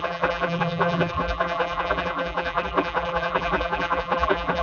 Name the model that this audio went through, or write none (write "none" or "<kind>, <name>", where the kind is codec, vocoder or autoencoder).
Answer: vocoder, BigVGAN v2